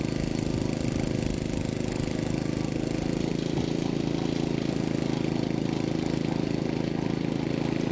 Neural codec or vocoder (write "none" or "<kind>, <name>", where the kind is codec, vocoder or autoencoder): none